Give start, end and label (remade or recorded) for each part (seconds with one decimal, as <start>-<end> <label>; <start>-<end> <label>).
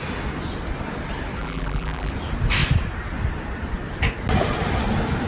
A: 0.0-1.4 recorded; 1.4-2.1 remade; 2.1-5.3 recorded